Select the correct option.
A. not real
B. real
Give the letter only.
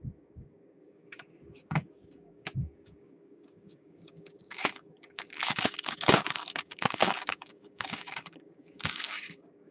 A